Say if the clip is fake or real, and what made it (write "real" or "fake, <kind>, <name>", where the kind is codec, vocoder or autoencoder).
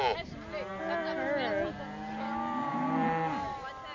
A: real